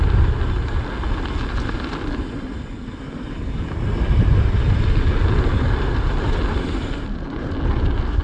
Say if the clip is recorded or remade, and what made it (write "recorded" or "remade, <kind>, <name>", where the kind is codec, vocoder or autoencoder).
recorded